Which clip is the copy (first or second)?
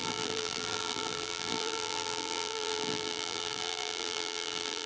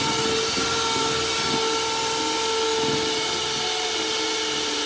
first